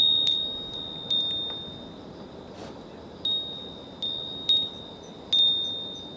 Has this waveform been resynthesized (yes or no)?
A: no